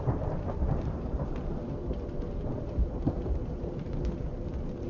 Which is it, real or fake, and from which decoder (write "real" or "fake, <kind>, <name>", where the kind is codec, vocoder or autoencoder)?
fake, vocoder, BigVGAN v2